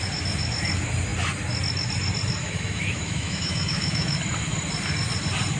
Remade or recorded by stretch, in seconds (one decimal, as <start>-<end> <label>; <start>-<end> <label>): 0.0-2.4 recorded; 2.4-4.2 remade; 4.2-5.6 recorded

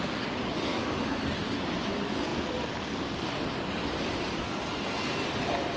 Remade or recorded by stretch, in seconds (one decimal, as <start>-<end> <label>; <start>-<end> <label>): 0.0-0.7 recorded; 0.7-1.2 remade; 1.2-5.8 recorded

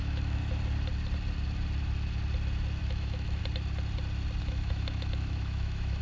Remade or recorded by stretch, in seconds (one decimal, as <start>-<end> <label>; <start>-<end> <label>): 0.0-0.4 remade; 0.4-2.8 recorded; 2.8-3.4 remade; 3.4-4.4 recorded; 4.4-6.0 remade